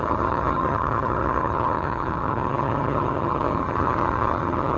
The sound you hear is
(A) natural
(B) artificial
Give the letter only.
B